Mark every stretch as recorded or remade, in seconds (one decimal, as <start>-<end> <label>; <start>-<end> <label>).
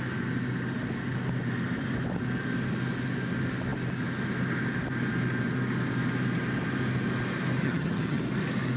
0.0-7.6 recorded; 7.6-8.2 remade; 8.2-8.8 recorded